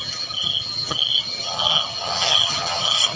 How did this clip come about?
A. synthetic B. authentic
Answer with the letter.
A